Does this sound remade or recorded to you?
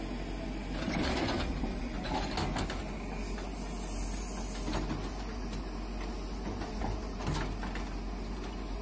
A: recorded